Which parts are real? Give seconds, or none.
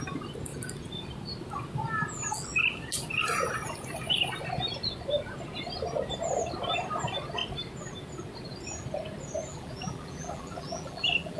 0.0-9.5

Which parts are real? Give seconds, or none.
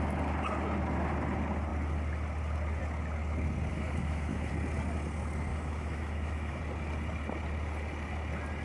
0.0-3.7; 4.5-5.5; 6.6-8.6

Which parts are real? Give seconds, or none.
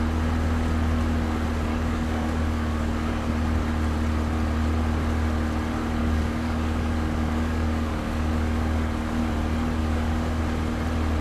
0.0-1.7; 3.3-6.0; 9.3-9.8; 10.4-11.2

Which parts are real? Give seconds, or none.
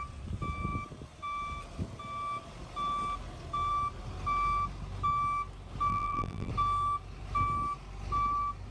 0.0-5.9; 6.5-8.7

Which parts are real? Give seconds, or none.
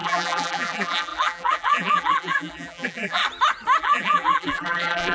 3.2-3.8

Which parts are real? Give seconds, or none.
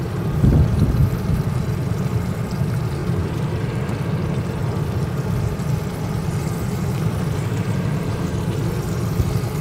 0.0-1.0; 2.5-3.0; 3.5-4.6; 7.2-9.6